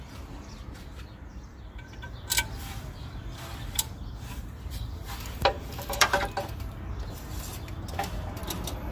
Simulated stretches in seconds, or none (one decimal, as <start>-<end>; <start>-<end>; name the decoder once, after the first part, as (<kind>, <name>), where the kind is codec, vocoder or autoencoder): 1.3-6.2 (vocoder, BigVGAN v2)